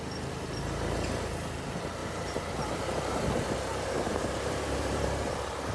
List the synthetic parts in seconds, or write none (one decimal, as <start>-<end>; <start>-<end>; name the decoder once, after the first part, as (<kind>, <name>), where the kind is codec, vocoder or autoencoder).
2.0-5.7 (vocoder, BigVGAN v2)